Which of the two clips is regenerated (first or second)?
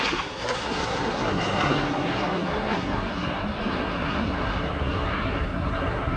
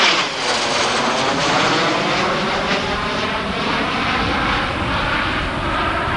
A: first